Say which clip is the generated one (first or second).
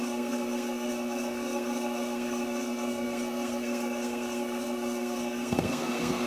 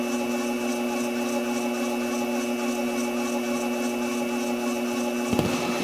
first